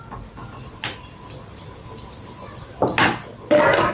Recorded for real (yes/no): yes